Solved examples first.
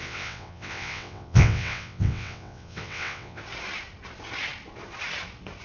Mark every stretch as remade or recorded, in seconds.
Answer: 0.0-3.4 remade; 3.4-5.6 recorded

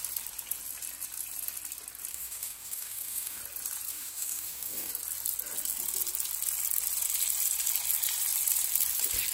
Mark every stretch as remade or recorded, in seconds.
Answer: 0.0-2.1 recorded; 2.1-3.4 remade; 3.4-3.9 recorded; 3.9-4.9 remade; 4.9-9.3 recorded

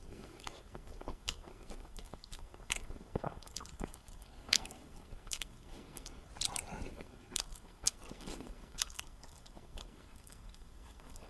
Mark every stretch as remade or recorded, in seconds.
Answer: 0.0-6.3 remade; 6.3-6.9 recorded; 6.9-11.3 remade

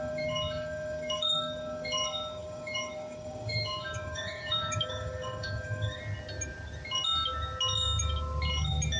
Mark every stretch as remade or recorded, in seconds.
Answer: 0.0-6.0 remade; 6.0-9.0 recorded

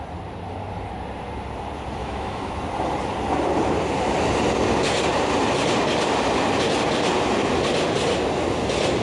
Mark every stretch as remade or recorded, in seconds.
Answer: 0.0-2.0 recorded; 2.0-2.5 remade; 2.5-9.0 recorded

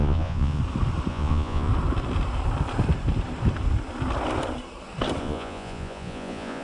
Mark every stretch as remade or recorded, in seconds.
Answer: 0.0-0.6 remade; 0.6-1.1 recorded; 1.1-1.7 remade; 1.7-5.2 recorded; 5.2-6.6 remade